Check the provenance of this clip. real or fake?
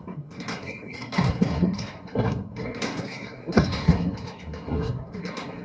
fake